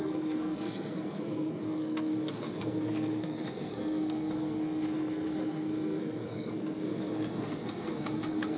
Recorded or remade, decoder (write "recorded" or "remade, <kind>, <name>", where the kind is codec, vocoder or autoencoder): remade, codec, SNAC